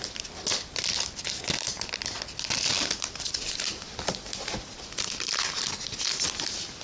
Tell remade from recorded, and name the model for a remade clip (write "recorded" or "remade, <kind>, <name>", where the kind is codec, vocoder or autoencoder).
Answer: recorded